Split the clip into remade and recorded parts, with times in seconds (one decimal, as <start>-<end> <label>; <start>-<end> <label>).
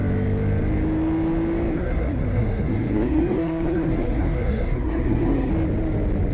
0.0-1.7 recorded; 1.7-5.5 remade; 5.5-6.3 recorded